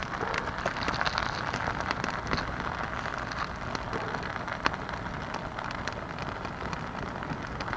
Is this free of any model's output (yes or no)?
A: yes